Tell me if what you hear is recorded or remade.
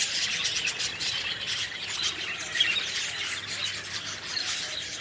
recorded